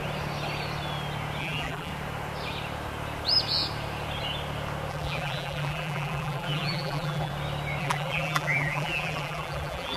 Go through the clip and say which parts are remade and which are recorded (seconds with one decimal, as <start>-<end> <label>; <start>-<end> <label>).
0.0-1.4 recorded; 1.4-1.9 remade; 1.9-4.9 recorded; 4.9-7.3 remade; 7.3-7.8 recorded; 7.8-10.0 remade

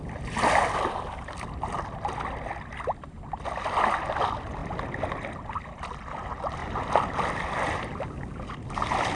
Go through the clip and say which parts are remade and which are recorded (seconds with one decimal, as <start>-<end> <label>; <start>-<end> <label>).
0.0-9.2 recorded

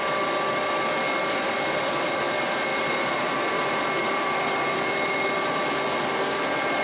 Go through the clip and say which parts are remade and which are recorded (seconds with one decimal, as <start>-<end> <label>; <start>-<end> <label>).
0.0-2.7 recorded; 2.7-5.3 remade; 5.3-6.8 recorded

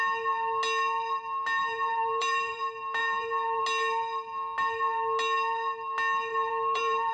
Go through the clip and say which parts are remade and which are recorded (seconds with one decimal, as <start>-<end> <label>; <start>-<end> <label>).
0.0-1.6 recorded; 1.6-2.6 remade; 2.6-3.0 recorded; 3.0-3.6 remade; 3.6-6.3 recorded; 6.3-7.1 remade